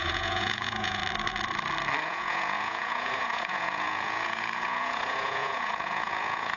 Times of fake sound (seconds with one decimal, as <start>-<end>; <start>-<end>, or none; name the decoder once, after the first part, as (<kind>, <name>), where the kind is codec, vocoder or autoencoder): 0.0-1.0 (vocoder, Vocos); 2.0-6.6